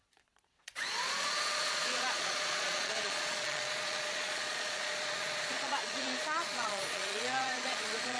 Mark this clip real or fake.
fake